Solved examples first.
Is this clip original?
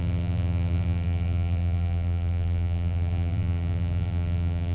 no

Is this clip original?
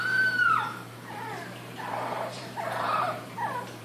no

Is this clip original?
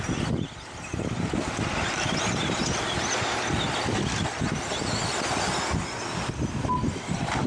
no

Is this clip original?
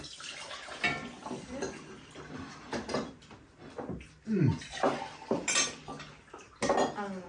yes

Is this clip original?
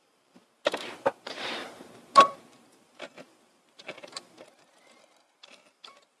no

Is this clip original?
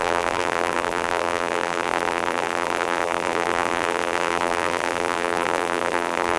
no